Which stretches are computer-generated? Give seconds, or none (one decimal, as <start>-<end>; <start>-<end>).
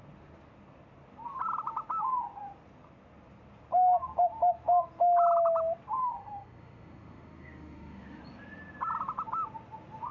6.0-8.2